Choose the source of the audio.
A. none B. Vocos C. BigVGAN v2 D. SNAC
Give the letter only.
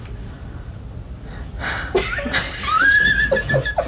A